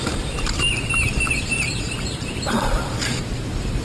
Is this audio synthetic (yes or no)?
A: yes